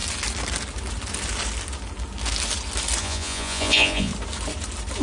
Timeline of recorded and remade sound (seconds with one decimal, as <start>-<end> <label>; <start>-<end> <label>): 0.0-3.0 recorded; 3.0-4.1 remade; 4.1-5.0 recorded